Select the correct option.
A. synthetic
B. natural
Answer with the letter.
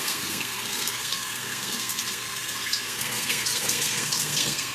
A